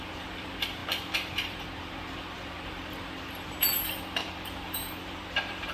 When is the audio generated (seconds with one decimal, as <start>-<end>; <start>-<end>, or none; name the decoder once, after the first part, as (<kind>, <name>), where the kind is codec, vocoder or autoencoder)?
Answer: 0.0-5.7 (vocoder, BigVGAN v2)